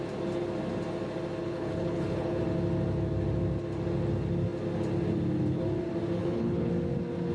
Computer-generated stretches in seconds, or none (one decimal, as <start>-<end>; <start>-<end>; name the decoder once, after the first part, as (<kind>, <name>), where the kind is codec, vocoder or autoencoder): 1.4-2.4 (codec, HILCodec); 6.2-6.7